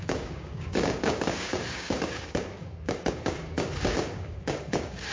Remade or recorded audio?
remade